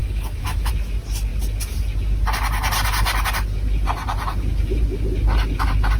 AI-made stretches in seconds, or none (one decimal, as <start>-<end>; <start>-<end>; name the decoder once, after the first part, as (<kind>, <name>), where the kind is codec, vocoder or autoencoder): 0.0-0.7 (autoencoder, DAC-VAE)